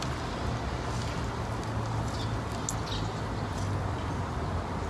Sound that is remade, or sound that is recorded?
recorded